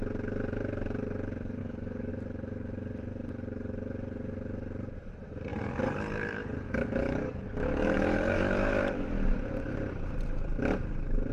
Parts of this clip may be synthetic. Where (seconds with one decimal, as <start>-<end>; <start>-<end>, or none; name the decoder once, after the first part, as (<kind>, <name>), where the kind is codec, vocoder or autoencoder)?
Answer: 1.6-2.1 (codec, DAC); 5.5-8.8

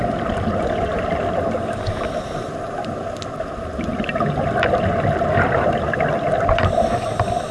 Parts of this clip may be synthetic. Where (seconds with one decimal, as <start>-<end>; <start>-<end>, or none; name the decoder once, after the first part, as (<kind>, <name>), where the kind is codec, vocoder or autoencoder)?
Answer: none